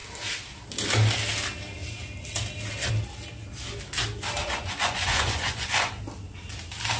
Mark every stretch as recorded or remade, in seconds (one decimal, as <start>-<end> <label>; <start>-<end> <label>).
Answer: 0.0-4.4 recorded; 4.4-5.9 remade; 5.9-7.0 recorded